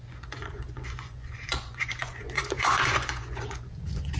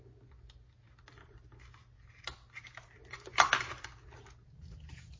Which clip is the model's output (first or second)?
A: first